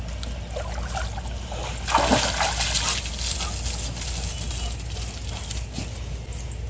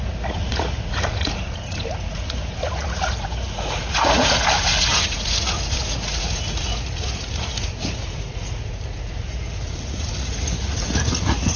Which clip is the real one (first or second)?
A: first